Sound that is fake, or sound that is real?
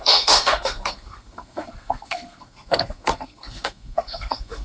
fake